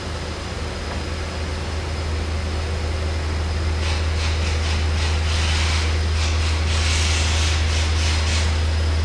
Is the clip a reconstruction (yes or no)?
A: no